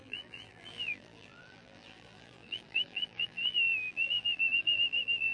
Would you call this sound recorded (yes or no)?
no